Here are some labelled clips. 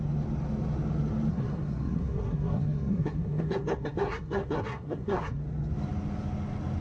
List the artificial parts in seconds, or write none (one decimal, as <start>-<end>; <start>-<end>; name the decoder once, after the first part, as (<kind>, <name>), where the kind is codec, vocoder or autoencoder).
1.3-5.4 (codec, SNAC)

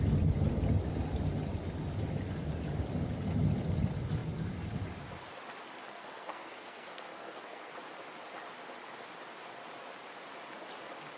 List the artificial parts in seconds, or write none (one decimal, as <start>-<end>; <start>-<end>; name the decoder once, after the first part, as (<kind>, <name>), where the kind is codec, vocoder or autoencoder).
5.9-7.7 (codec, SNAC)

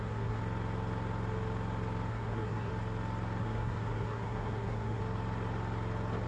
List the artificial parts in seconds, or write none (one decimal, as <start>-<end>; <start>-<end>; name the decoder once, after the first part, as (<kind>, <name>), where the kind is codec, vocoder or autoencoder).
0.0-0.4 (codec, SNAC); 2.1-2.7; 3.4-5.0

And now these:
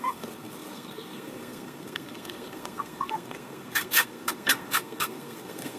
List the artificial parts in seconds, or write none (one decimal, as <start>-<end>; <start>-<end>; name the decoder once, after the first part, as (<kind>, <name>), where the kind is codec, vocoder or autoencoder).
0.0-5.8 (codec, SNAC)